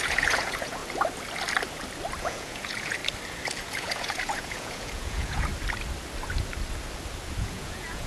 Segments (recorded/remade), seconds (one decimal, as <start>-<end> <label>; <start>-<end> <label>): 0.0-0.8 remade; 0.8-2.2 recorded; 2.2-3.0 remade; 3.0-3.6 recorded; 3.6-5.5 remade; 5.5-7.4 recorded; 7.4-8.1 remade